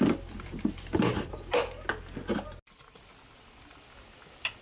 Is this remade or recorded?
recorded